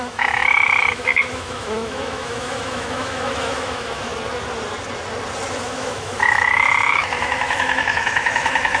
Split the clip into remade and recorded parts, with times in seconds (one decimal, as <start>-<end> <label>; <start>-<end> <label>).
0.0-4.1 remade; 4.1-5.6 recorded; 5.6-8.8 remade